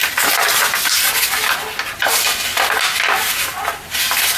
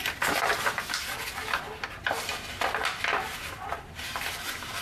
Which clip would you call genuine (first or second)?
first